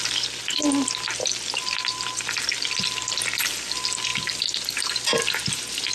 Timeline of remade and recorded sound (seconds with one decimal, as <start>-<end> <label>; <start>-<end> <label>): 0.0-5.9 recorded